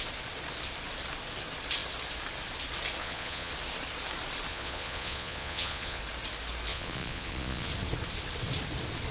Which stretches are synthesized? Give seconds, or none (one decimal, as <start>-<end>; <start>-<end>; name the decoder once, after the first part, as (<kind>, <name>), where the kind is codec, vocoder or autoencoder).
3.0-3.5 (vocoder, Vocos); 4.5-6.0; 6.7-7.7